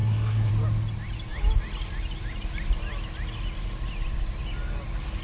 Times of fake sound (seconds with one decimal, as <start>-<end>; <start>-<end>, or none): 0.0-0.5